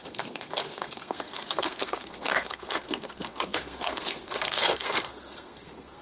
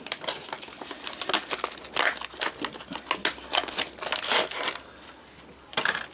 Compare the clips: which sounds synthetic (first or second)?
first